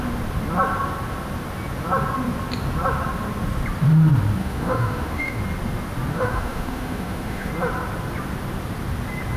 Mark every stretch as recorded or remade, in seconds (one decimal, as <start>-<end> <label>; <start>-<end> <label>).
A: 0.0-4.4 recorded; 4.4-5.4 remade; 5.4-6.1 recorded; 6.1-7.5 remade; 7.5-9.4 recorded